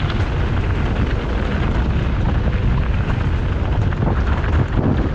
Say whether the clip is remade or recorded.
recorded